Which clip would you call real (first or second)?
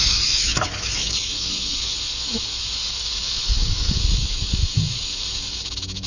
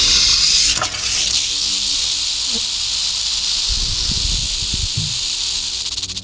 second